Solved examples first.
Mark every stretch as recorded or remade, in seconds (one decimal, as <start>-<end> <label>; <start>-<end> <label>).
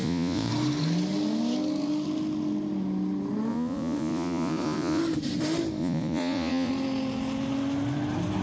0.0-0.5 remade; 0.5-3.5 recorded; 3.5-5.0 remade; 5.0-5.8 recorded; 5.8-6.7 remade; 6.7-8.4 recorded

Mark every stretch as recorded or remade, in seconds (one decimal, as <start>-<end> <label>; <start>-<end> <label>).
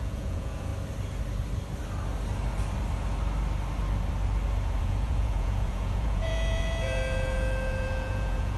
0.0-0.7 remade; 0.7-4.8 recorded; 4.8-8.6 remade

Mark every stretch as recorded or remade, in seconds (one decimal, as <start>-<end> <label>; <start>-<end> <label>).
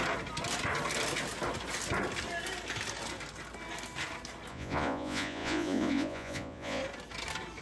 0.0-4.5 recorded; 4.5-6.8 remade; 6.8-7.6 recorded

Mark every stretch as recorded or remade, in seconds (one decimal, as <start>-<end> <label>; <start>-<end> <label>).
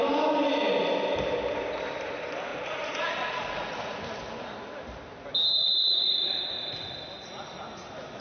0.0-2.5 recorded; 2.5-4.0 remade; 4.0-5.6 recorded; 5.6-6.3 remade; 6.3-8.2 recorded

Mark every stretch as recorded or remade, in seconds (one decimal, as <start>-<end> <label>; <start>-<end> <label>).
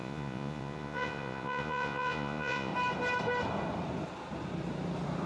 0.0-2.7 remade; 2.7-5.3 recorded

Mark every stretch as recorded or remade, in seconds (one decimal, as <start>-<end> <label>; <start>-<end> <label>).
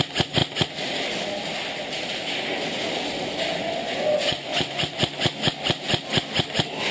0.0-3.5 recorded; 3.5-5.0 remade; 5.0-6.9 recorded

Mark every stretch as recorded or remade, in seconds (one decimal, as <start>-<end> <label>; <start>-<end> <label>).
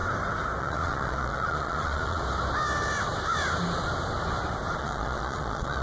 0.0-0.6 recorded; 0.6-2.2 remade; 2.2-4.8 recorded; 4.8-5.8 remade